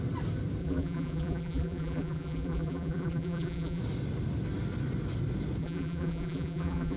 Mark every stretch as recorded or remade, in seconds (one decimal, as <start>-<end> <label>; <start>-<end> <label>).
0.0-0.6 recorded; 0.6-3.8 remade; 3.8-5.6 recorded; 5.6-7.0 remade

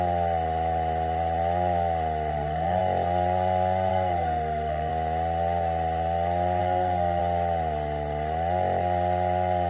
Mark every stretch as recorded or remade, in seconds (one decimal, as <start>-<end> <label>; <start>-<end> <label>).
0.0-2.3 recorded; 2.3-2.8 remade; 2.8-3.9 recorded; 3.9-4.9 remade; 4.9-6.6 recorded; 6.6-7.2 remade; 7.2-9.7 recorded

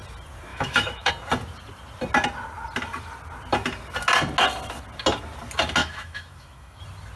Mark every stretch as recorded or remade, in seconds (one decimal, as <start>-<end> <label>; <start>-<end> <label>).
0.0-0.5 recorded; 0.5-1.1 remade; 1.1-5.8 recorded; 5.8-6.8 remade; 6.8-7.2 recorded